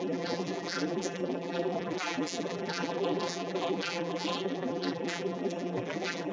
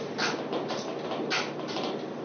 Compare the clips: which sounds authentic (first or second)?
second